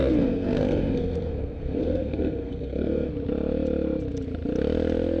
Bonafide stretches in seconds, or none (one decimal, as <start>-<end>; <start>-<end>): 3.1-5.2